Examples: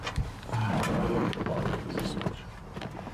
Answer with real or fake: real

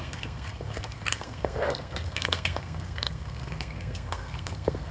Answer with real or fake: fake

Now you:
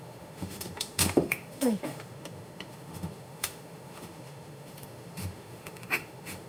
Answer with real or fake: fake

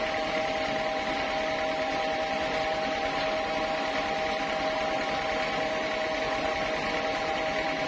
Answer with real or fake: real